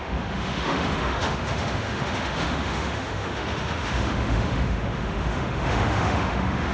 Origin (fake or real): fake